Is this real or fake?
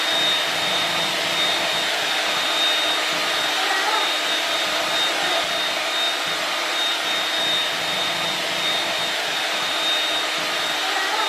real